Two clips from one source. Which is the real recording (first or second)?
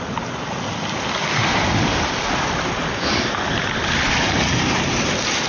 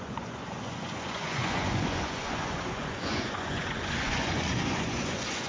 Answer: first